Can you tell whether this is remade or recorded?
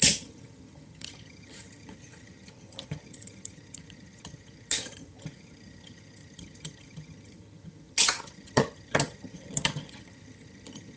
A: remade